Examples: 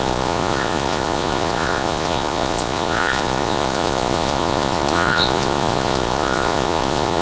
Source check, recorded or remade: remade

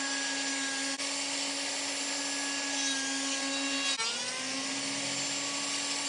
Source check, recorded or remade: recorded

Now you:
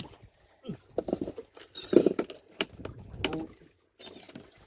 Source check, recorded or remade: recorded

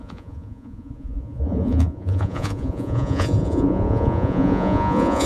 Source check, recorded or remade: remade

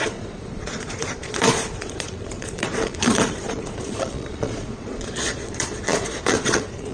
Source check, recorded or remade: remade